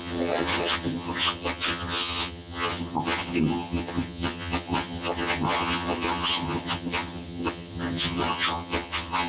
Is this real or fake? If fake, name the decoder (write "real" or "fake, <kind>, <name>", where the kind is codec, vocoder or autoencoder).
fake, vocoder, HiFi-GAN